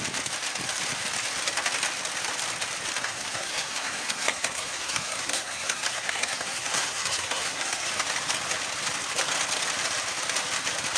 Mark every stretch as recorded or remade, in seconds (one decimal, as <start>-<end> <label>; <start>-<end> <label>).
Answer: 0.0-3.0 recorded; 3.0-7.9 remade; 7.9-11.0 recorded